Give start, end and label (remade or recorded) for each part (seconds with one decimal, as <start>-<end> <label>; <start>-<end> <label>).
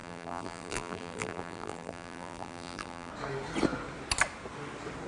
0.0-3.1 remade; 3.1-5.1 recorded